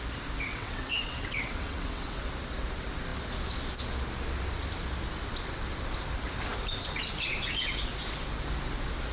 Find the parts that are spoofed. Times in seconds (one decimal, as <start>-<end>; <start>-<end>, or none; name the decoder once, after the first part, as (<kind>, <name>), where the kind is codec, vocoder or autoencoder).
0.5-2.3 (vocoder, WaveNeXt)